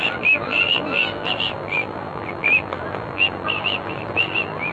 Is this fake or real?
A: fake